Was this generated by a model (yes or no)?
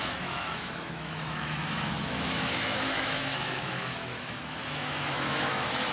yes